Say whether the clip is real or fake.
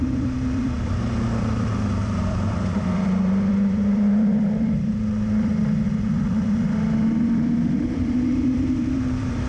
fake